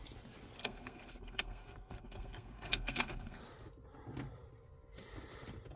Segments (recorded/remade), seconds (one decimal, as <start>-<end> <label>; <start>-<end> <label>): 0.0-0.6 recorded; 0.6-3.4 remade; 3.4-5.8 recorded